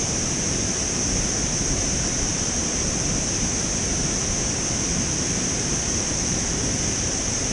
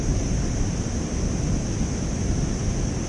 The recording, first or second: second